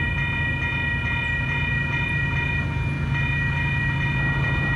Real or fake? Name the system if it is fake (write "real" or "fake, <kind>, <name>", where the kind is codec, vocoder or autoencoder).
real